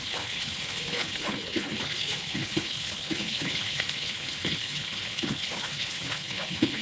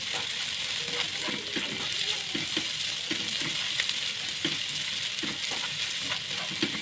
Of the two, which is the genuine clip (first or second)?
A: second